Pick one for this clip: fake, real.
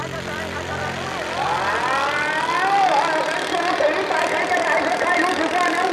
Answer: real